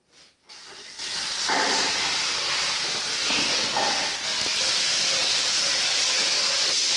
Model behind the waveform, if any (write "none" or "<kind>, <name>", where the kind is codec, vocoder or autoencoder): none